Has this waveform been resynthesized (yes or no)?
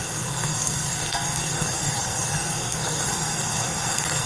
yes